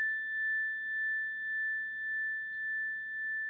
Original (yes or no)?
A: yes